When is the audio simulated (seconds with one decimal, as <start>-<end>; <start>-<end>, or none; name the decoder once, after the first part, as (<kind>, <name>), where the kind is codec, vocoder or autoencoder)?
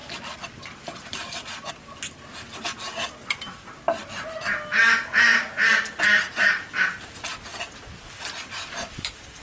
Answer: none